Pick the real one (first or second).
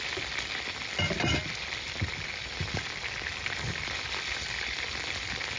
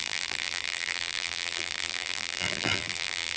first